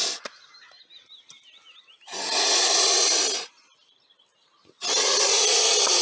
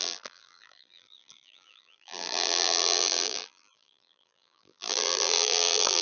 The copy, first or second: second